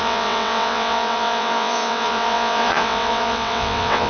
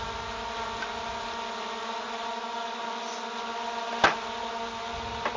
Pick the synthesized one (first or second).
first